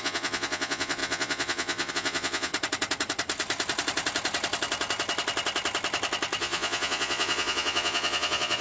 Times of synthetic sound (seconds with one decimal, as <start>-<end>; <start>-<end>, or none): 0.0-2.5; 6.4-8.6